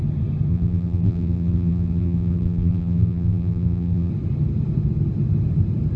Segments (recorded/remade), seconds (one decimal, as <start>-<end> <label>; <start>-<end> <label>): 0.0-0.5 recorded; 0.5-4.1 remade; 4.1-6.0 recorded